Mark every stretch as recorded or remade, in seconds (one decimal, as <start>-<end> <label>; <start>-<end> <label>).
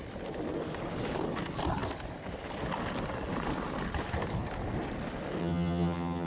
0.0-5.4 recorded; 5.4-6.3 remade